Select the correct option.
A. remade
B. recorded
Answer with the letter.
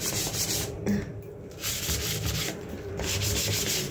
A